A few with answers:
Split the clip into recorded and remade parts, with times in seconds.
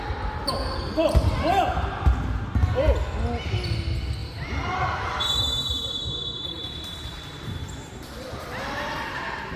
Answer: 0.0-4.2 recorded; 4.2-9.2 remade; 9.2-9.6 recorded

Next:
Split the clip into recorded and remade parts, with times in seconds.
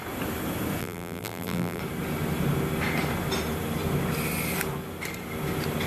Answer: 0.0-0.8 recorded; 0.8-1.8 remade; 1.8-5.9 recorded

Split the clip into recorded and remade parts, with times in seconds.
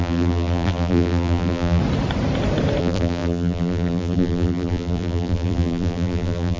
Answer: 0.0-1.8 remade; 1.8-2.8 recorded; 2.8-6.6 remade